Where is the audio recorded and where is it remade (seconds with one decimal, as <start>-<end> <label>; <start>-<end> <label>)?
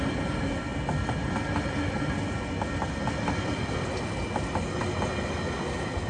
0.0-6.1 recorded